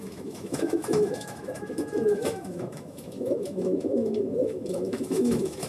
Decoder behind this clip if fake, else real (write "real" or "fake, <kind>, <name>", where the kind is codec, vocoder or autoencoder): fake, autoencoder, DAC-VAE